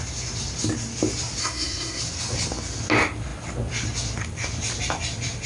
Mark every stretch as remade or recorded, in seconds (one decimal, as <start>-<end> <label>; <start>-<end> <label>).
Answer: 0.0-1.4 recorded; 1.4-2.0 remade; 2.0-5.5 recorded